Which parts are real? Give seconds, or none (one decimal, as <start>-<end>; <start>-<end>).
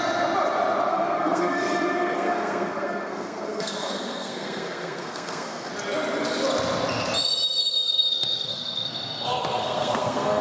0.0-0.9; 5.7-7.6